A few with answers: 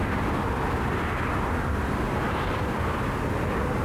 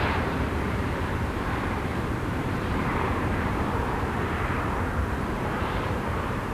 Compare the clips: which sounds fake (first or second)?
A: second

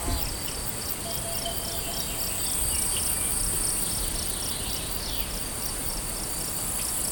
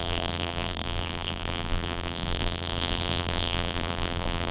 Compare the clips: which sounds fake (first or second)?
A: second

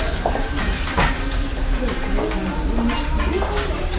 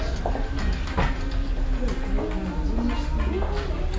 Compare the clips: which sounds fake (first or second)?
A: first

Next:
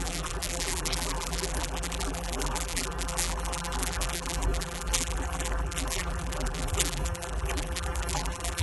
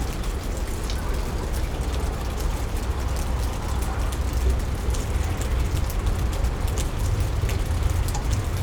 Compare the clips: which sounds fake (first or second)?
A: first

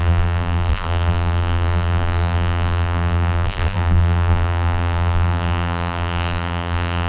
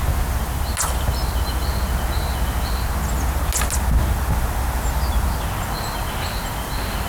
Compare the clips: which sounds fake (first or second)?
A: first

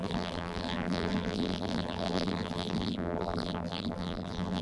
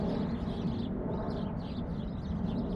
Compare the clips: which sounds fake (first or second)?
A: first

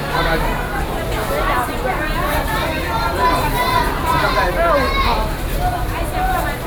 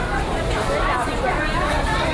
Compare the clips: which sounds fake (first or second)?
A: second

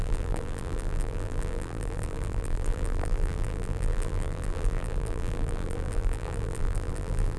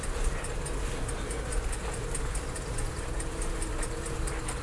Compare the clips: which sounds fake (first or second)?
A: first